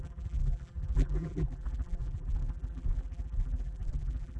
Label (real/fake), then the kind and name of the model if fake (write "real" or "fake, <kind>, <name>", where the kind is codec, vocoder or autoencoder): fake, vocoder, BigVGAN v2